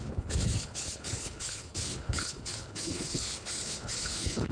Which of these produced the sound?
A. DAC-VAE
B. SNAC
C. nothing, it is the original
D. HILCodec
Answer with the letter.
D